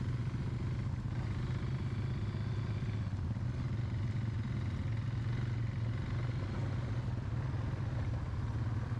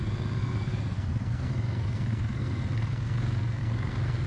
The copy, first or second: second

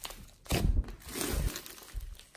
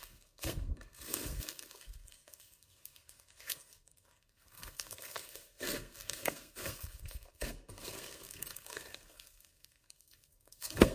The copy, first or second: second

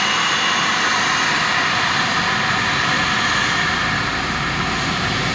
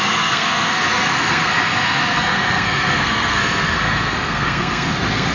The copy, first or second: second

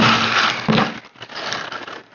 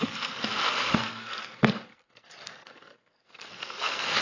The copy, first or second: second